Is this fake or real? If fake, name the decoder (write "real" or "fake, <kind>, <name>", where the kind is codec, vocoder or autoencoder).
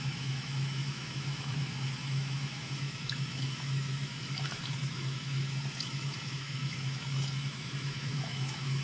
fake, autoencoder, DAC-VAE